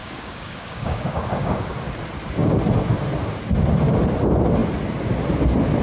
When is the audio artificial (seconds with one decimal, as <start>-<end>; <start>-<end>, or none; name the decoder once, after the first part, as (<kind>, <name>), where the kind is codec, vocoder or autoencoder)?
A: 0.0-1.7 (codec, DAC)

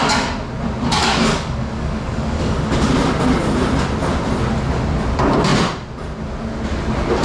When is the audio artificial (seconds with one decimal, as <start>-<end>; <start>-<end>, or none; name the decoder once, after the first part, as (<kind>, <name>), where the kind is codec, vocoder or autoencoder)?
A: 1.0-2.9 (codec, DAC)